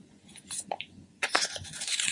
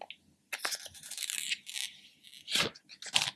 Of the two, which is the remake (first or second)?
first